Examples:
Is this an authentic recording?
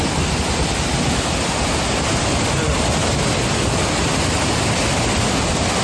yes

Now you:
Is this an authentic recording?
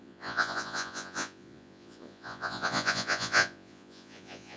no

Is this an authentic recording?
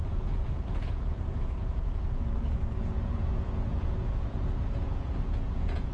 no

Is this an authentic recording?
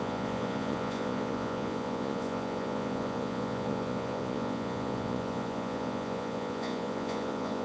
no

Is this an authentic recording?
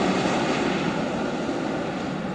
yes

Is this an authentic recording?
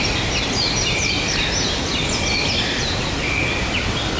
yes